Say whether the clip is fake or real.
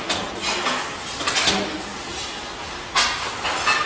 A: real